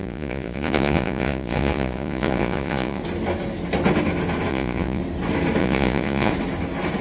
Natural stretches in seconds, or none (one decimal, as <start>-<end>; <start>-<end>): 3.0-4.5; 5.0-5.6; 6.3-7.0

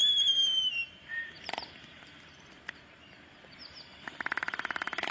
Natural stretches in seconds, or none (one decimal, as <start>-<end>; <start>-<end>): 3.1-3.9

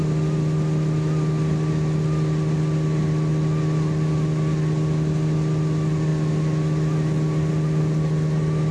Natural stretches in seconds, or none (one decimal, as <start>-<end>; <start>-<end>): 0.0-8.7

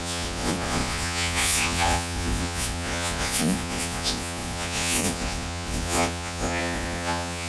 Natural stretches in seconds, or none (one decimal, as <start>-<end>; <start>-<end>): none